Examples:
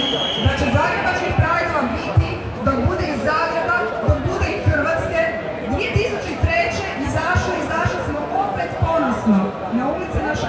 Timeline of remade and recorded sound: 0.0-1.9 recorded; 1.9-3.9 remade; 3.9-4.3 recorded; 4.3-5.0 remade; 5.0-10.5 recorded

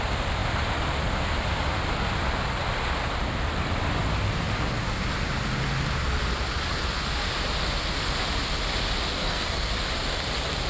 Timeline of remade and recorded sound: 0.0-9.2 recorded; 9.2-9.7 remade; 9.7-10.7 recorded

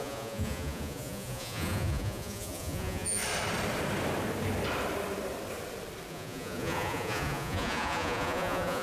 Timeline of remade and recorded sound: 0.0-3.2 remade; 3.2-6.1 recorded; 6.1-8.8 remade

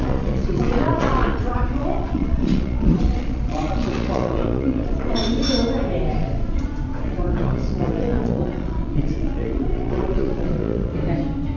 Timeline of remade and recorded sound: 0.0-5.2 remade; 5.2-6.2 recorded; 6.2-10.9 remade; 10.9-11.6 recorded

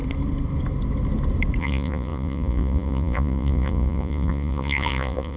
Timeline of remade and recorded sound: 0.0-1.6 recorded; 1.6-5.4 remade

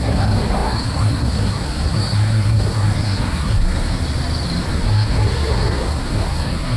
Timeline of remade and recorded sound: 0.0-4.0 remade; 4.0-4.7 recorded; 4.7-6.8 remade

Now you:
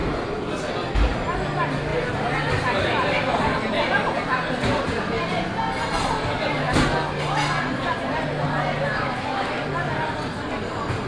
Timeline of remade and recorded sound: 0.0-8.8 recorded; 8.8-9.5 remade; 9.5-11.1 recorded